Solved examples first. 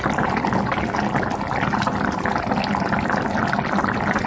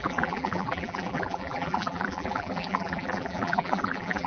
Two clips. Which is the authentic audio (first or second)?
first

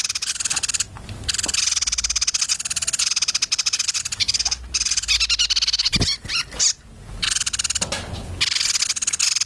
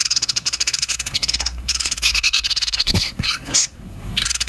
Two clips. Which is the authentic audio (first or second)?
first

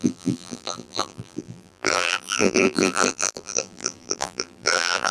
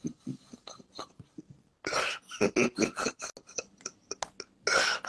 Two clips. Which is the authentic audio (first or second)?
second